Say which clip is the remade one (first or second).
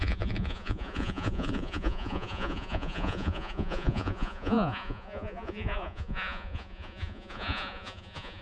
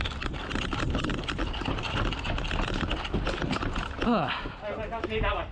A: first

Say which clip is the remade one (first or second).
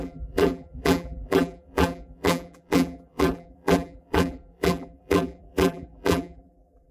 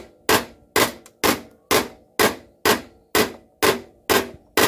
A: first